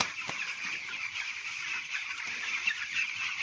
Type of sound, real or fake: real